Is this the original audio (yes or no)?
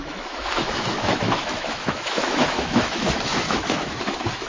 no